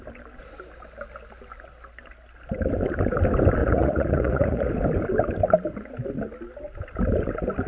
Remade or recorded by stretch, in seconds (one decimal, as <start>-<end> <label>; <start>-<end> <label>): 0.0-3.6 recorded; 3.6-4.7 remade; 4.7-7.7 recorded